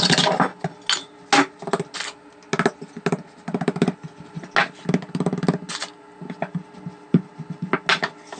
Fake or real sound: real